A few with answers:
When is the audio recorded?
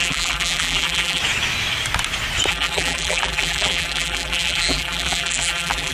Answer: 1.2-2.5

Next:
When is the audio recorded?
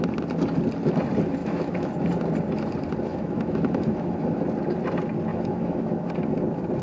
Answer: 0.0-1.4; 1.9-3.1; 4.4-5.3; 6.1-6.8